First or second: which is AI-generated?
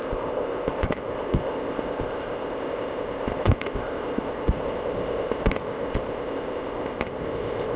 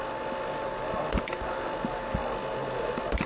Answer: first